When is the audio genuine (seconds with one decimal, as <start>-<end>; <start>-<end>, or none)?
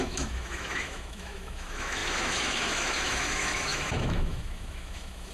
none